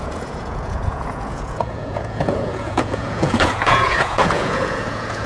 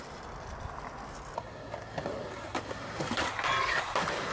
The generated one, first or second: first